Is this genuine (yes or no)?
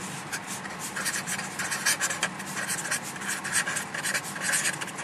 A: yes